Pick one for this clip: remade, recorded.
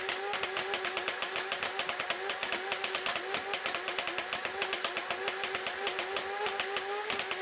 recorded